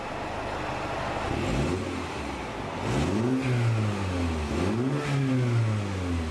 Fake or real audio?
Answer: real